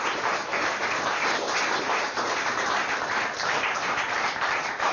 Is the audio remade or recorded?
remade